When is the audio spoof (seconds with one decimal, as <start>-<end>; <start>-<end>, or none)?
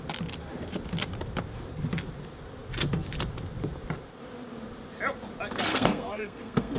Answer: 5.7-6.8